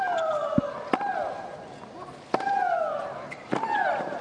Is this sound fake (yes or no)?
no